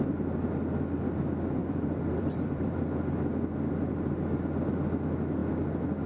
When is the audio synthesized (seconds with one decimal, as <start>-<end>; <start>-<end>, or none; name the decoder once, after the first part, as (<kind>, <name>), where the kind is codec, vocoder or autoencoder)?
1.6-2.8 (vocoder, BigVGAN v2)